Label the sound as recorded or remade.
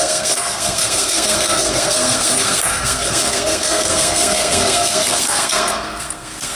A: remade